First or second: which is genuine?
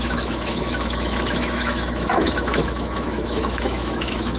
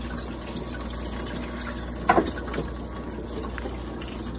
second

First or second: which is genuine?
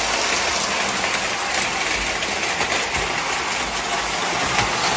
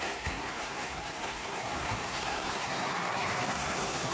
first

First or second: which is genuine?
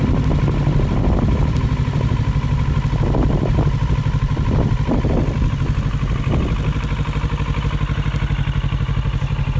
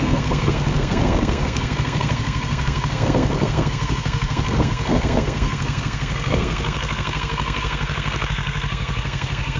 first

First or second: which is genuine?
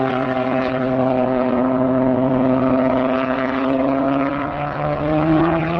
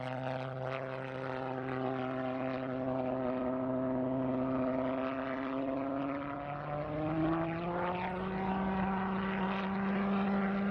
second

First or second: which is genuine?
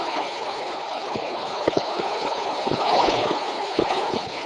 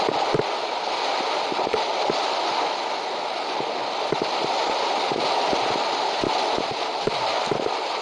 second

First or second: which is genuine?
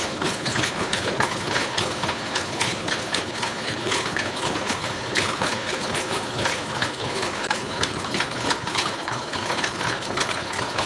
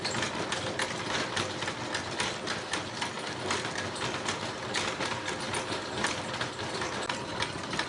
second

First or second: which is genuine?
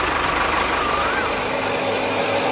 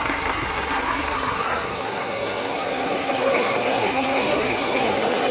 first